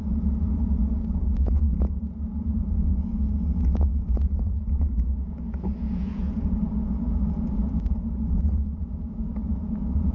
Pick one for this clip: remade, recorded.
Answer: remade